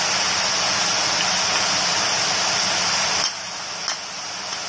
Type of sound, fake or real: real